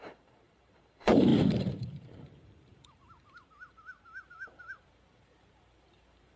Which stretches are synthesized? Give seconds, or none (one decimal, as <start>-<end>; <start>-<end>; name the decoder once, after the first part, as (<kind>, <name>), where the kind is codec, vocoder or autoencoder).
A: 0.0-6.4 (vocoder, BigVGAN v2)